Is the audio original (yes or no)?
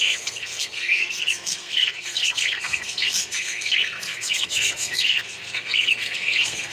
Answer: no